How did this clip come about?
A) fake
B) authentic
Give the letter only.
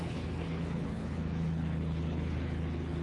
A